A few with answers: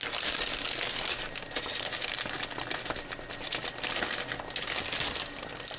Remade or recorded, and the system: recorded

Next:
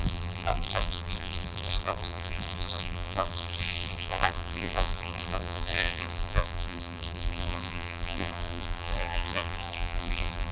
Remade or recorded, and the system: remade, vocoder, BigVGAN v2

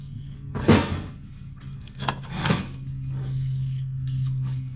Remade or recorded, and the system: remade, codec, SNAC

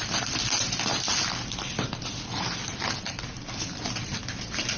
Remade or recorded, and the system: recorded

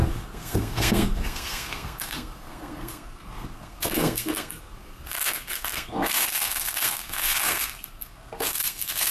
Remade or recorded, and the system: remade, codec, SNAC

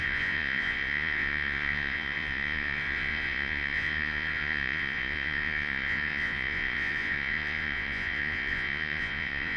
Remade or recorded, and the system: remade, vocoder, Vocos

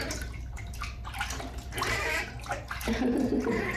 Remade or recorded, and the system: recorded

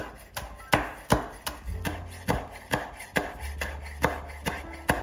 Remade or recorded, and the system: recorded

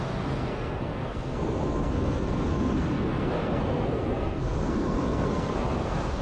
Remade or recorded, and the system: remade, codec, SNAC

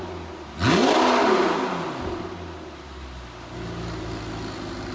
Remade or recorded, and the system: recorded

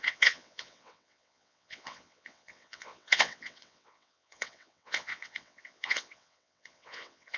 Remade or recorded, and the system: remade, vocoder, WaveNeXt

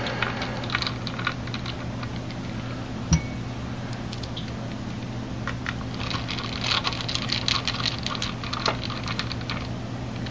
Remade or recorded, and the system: recorded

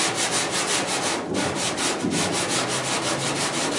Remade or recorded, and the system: recorded